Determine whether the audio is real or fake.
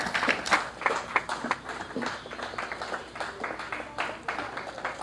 real